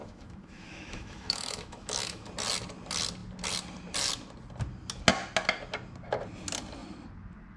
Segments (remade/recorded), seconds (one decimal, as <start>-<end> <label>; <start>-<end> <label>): 0.0-2.3 remade; 2.3-7.6 recorded